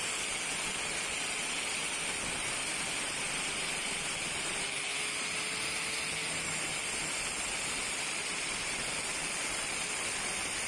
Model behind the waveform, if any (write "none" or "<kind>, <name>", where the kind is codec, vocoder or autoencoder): none